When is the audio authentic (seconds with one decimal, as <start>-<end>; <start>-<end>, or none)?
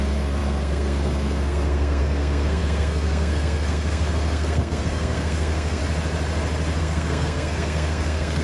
5.8-6.8